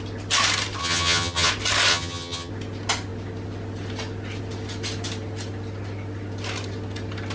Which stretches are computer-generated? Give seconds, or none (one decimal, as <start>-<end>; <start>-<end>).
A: 0.8-1.5; 1.9-2.5